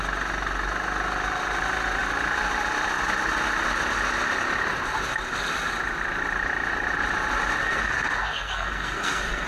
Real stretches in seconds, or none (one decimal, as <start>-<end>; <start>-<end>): 0.0-7.6